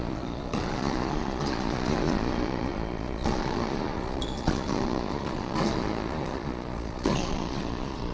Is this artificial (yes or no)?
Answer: yes